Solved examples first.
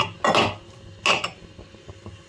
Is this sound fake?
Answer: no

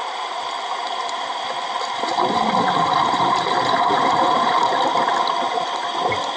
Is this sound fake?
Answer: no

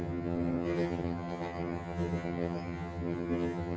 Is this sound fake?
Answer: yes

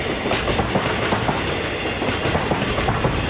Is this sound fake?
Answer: no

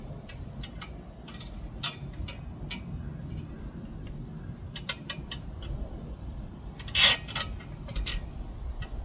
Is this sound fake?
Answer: no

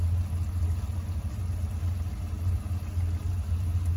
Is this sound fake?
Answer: no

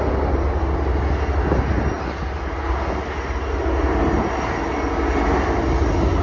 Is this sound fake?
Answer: no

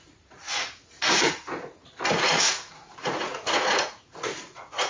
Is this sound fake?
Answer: yes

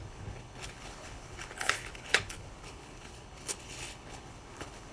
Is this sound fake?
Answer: yes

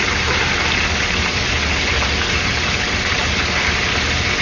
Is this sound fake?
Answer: yes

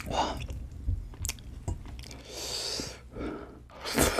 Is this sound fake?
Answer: no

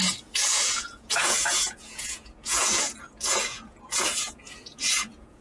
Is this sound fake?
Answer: yes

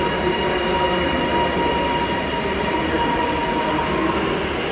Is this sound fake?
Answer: no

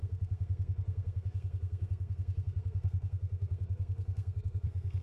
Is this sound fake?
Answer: yes